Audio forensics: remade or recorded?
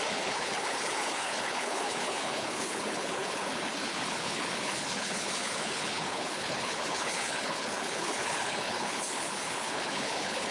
remade